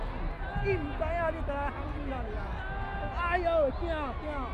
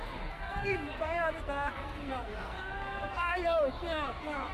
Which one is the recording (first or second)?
first